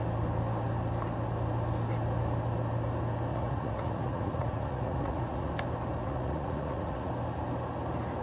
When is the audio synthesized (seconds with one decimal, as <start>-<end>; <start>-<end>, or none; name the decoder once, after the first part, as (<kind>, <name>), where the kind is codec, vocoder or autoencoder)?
3.3-5.5 (vocoder, Vocos); 6.0-7.1